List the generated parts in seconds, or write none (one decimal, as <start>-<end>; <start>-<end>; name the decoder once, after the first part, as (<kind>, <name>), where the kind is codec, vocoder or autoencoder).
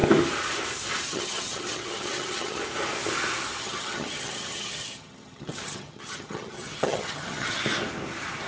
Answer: 1.1-2.6 (vocoder, HiFi-GAN); 3.6-7.6